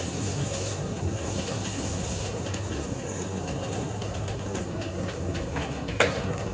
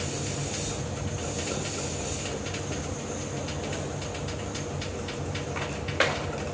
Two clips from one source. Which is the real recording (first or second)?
second